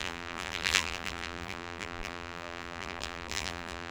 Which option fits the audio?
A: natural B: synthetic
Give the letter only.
B